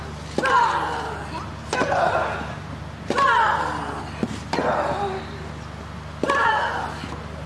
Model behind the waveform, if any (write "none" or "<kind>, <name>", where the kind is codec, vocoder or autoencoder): none